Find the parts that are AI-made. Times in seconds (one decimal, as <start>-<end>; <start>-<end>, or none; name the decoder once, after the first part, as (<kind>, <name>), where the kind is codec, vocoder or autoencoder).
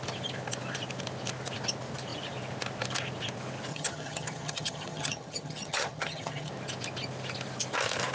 3.7-6.5 (vocoder, HiFi-GAN)